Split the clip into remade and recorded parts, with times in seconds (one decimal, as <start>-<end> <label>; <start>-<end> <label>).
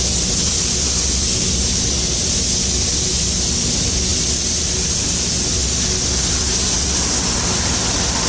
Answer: 0.0-8.3 recorded